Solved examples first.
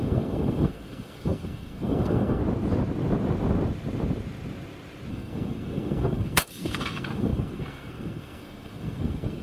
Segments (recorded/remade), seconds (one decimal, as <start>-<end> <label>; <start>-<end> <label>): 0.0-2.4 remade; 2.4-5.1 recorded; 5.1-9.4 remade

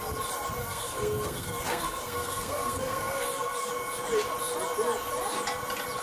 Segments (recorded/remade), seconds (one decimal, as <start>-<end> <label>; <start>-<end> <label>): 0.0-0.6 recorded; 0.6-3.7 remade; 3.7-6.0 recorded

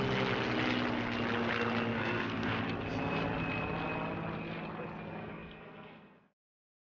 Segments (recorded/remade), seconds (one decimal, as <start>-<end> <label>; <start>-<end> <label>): 0.0-1.9 recorded; 1.9-2.6 remade; 2.6-5.2 recorded; 5.2-6.9 remade

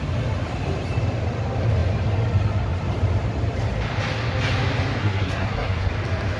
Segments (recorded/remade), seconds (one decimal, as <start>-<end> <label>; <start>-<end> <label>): 0.0-5.0 recorded; 5.0-5.9 remade; 5.9-6.4 recorded

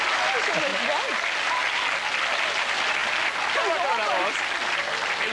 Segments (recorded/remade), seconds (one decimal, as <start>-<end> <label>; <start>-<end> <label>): 0.0-5.3 recorded

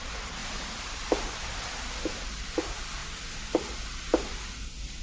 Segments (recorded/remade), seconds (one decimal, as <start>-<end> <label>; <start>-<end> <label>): 0.0-5.0 recorded

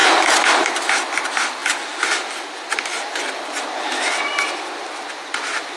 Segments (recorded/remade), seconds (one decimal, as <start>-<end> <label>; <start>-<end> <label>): 0.0-5.8 recorded